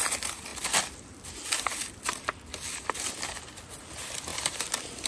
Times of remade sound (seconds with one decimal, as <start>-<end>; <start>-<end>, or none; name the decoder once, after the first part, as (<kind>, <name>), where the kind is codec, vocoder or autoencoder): none